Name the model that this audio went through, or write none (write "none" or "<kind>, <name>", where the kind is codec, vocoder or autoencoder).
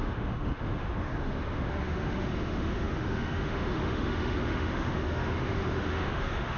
autoencoder, DAC-VAE